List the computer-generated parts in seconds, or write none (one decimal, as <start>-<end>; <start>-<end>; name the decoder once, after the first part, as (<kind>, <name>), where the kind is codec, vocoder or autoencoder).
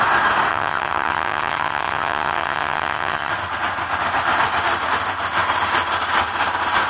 0.5-3.3 (vocoder, HiFi-GAN)